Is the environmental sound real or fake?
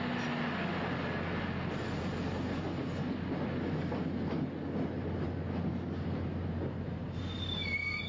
real